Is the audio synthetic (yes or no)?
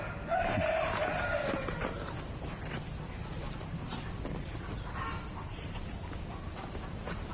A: no